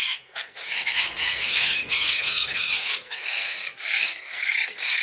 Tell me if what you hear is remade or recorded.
remade